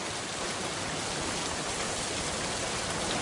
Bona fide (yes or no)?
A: yes